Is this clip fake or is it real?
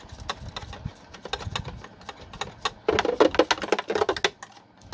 real